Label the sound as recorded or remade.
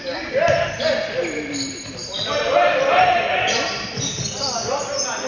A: recorded